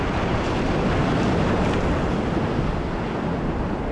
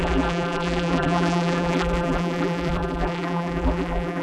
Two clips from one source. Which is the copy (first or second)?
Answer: second